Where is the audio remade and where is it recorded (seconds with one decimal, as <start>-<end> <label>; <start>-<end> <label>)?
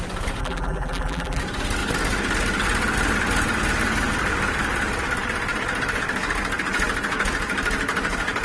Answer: 0.0-0.4 recorded; 0.4-1.4 remade; 1.4-8.4 recorded